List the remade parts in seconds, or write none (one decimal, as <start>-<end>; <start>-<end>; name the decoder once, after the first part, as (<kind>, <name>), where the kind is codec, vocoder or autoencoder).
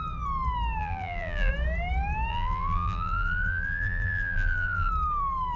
0.8-1.5 (vocoder, BigVGAN v2); 2.3-4.9